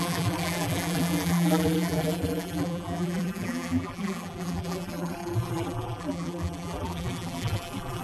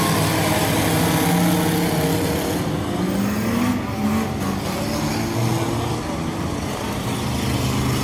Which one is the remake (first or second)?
first